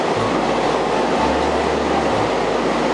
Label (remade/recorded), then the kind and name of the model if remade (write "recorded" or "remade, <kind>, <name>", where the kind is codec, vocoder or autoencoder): recorded